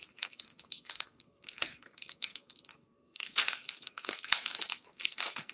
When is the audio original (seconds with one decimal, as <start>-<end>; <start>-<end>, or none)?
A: none